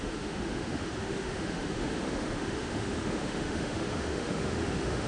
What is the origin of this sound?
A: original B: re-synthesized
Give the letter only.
B